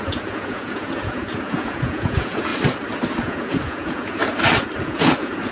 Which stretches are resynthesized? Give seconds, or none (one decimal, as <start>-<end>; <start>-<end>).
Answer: 0.0-2.5; 3.2-4.2; 4.8-5.5